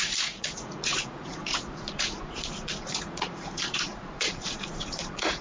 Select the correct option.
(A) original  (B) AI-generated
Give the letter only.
B